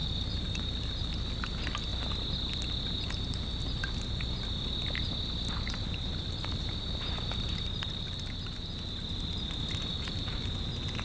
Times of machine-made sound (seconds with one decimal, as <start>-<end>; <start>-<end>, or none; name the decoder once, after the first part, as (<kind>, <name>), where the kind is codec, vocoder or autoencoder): 0.0-1.1 (vocoder, BigVGAN v2); 6.0-8.3; 9.9-10.5